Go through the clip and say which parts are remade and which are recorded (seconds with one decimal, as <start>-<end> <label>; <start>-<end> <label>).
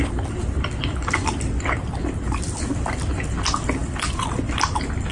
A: 0.0-0.4 recorded; 0.4-3.2 remade; 3.2-3.8 recorded; 3.8-5.1 remade